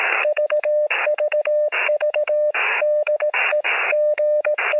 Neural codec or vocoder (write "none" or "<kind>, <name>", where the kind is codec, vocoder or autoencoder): codec, DAC